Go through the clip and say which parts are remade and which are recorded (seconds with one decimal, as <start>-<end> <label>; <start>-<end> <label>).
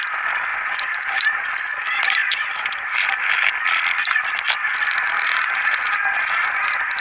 0.0-0.5 recorded; 0.5-1.5 remade; 1.5-2.2 recorded; 2.2-3.5 remade; 3.5-7.0 recorded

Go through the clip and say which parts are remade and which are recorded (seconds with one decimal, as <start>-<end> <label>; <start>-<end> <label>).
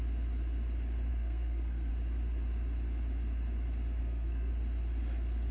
0.0-1.1 recorded; 1.1-1.9 remade; 1.9-4.0 recorded; 4.0-4.5 remade; 4.5-5.5 recorded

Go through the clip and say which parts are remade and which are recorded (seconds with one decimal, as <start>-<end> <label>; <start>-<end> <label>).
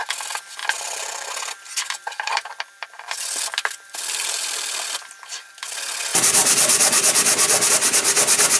0.0-0.6 recorded; 0.6-5.1 remade; 5.1-6.1 recorded; 6.1-7.7 remade; 7.7-8.6 recorded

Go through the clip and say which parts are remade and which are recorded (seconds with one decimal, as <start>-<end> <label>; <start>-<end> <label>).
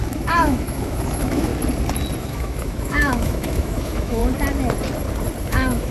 0.0-1.5 remade; 1.5-2.2 recorded; 2.2-4.2 remade; 4.2-5.4 recorded; 5.4-5.9 remade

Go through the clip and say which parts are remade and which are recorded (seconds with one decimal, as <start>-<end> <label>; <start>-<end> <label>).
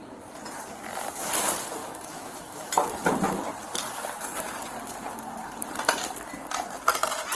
0.0-1.8 recorded; 1.8-2.7 remade; 2.7-7.3 recorded